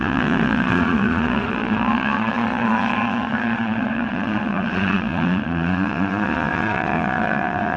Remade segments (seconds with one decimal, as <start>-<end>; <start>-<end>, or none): 0.0-7.8